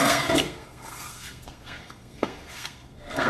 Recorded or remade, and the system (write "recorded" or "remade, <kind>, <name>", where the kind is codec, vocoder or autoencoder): remade, codec, SNAC